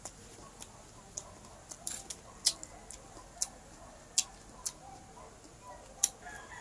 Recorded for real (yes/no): yes